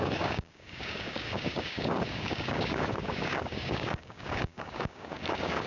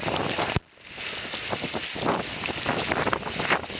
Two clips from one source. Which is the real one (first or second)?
second